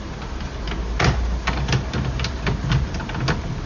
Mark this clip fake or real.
real